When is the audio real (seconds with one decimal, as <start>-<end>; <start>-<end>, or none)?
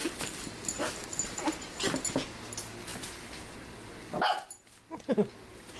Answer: 0.0-5.8